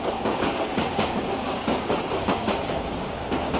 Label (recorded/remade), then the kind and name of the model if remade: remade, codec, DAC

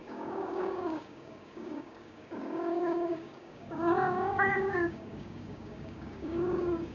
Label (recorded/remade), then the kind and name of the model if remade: remade, codec, DAC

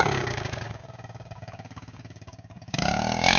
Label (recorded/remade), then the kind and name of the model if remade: remade, codec, DAC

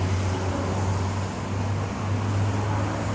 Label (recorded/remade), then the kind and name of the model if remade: recorded